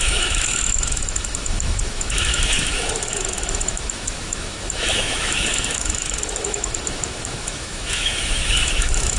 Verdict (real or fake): fake